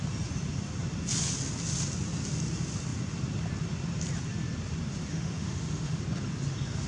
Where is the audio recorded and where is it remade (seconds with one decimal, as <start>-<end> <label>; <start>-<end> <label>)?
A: 0.0-5.1 recorded; 5.1-6.0 remade; 6.0-6.9 recorded